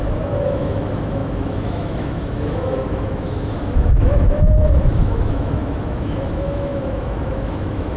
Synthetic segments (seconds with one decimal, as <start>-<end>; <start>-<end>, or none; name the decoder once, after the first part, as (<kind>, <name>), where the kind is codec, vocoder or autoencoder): 0.0-8.0 (autoencoder, DAC-VAE)